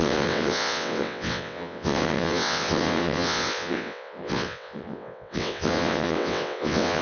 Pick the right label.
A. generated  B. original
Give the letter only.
A